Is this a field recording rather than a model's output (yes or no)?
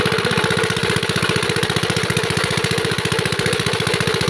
yes